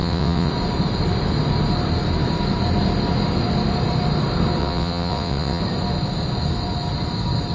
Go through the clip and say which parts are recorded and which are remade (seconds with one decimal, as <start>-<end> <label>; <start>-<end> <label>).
0.0-0.5 remade; 0.5-4.6 recorded; 4.6-5.6 remade; 5.6-7.5 recorded